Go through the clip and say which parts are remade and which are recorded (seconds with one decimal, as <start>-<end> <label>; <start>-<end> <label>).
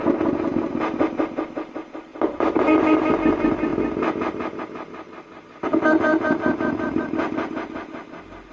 0.0-2.1 recorded; 2.1-3.1 remade; 3.1-8.5 recorded